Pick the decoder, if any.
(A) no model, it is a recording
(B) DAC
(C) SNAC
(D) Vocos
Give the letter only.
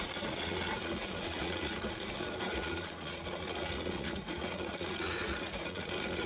D